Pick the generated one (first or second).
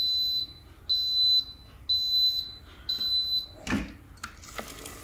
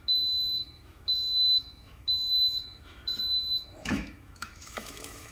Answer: second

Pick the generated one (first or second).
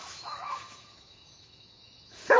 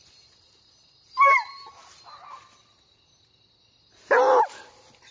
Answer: first